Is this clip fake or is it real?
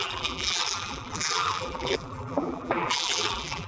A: fake